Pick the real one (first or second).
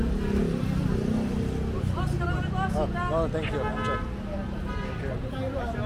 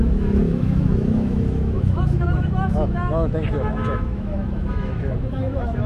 first